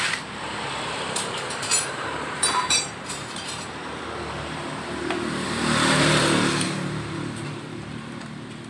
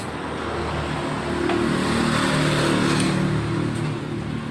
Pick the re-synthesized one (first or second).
first